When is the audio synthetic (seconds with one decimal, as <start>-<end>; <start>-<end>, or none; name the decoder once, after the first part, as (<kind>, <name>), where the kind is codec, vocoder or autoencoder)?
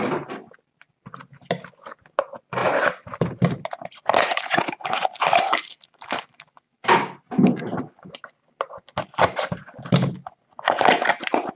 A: none